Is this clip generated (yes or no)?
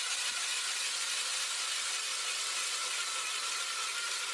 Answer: no